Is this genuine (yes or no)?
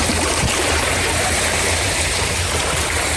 no